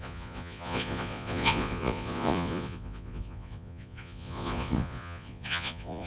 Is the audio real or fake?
fake